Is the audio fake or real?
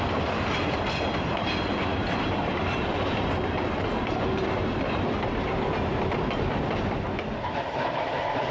real